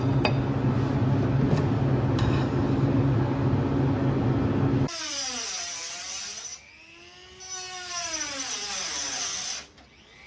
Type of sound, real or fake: real